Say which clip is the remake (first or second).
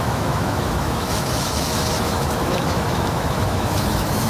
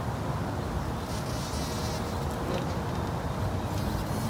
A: first